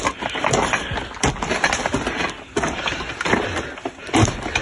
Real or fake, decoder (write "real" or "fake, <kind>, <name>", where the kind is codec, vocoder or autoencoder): real